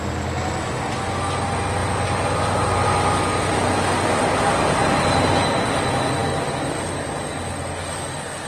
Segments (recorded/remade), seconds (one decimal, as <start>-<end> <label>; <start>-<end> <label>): 0.0-1.8 recorded; 1.8-3.7 remade; 3.7-8.5 recorded